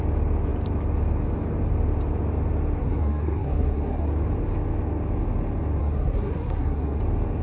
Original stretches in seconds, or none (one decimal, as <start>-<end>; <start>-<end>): 0.0-2.8; 4.1-5.8; 7.0-7.4